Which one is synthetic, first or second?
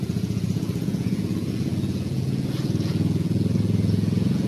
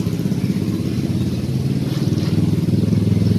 first